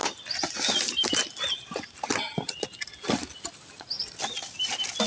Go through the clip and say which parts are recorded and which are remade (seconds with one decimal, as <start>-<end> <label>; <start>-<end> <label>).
0.0-5.1 recorded